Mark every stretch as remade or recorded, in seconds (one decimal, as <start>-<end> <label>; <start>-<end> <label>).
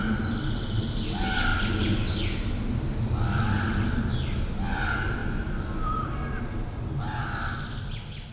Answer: 0.0-8.3 recorded